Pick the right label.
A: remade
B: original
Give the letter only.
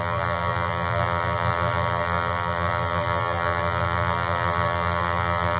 A